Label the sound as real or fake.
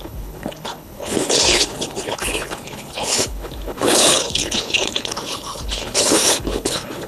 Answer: fake